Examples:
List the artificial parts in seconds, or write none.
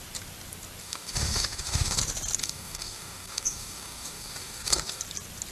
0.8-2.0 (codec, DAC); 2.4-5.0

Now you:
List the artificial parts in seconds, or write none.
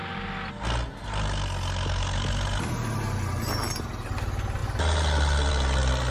none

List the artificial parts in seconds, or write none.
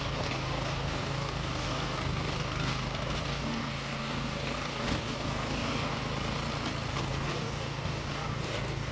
0.0-6.0 (codec, DAC); 7.1-8.9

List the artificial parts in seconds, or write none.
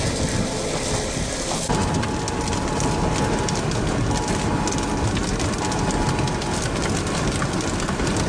none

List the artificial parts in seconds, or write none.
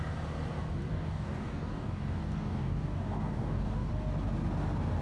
0.9-3.9 (codec, DAC)